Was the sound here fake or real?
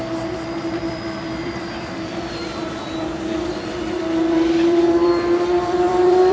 fake